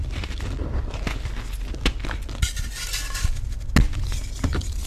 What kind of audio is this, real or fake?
real